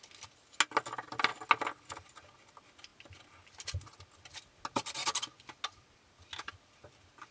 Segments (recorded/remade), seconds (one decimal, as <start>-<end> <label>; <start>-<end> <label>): 0.0-7.3 recorded